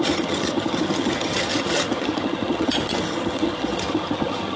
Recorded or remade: remade